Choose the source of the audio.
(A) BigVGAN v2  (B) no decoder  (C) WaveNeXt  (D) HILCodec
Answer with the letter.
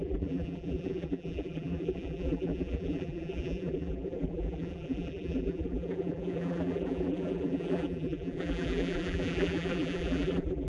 A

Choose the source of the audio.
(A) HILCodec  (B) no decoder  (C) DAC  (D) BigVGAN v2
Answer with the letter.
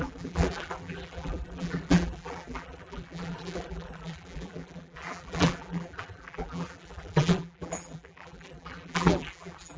D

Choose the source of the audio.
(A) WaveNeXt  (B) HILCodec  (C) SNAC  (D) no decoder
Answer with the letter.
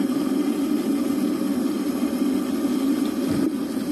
D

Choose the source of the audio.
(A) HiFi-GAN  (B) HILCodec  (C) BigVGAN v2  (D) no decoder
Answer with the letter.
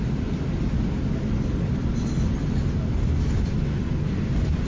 D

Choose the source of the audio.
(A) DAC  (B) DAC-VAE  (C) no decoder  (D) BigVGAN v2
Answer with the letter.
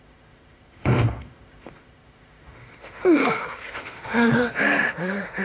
B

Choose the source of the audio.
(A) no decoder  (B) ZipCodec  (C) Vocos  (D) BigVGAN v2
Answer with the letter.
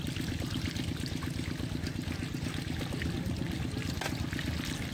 A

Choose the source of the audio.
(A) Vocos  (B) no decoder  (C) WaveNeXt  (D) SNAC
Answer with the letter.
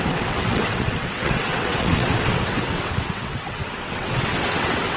C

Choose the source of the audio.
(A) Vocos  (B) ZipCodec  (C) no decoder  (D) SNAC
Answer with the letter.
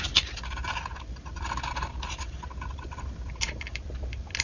C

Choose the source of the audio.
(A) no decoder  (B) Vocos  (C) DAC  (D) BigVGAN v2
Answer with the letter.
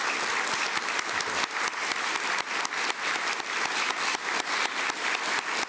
A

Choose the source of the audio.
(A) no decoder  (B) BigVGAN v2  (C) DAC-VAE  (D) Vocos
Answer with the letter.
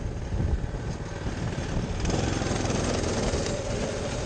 A